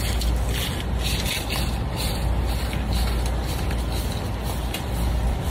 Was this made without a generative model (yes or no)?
yes